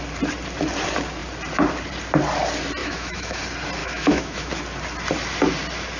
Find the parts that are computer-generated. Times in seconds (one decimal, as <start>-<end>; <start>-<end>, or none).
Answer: 2.8-3.4; 3.8-4.5